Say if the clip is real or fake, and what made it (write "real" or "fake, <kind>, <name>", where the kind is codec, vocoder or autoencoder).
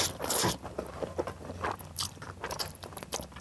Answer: fake, vocoder, BigVGAN v2